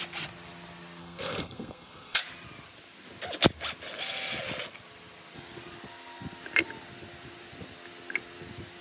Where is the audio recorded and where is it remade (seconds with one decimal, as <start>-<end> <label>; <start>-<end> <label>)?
0.0-1.0 recorded; 1.0-2.2 remade; 2.2-8.8 recorded